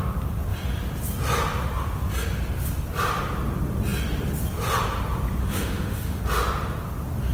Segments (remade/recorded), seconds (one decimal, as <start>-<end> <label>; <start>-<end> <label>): 0.0-5.4 recorded; 5.4-6.2 remade; 6.2-7.3 recorded